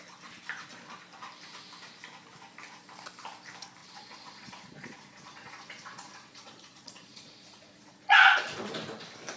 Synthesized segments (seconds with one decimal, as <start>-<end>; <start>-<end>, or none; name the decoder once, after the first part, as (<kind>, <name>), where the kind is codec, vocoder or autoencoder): 3.8-8.7 (vocoder, Vocos)